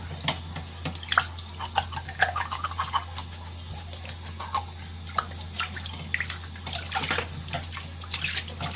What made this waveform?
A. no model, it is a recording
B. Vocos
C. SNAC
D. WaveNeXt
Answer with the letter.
A